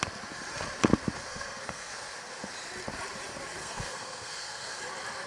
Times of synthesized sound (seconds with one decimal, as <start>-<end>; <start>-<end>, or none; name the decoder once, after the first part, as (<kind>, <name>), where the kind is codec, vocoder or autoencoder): 1.3-1.9 (codec, SNAC); 3.6-4.8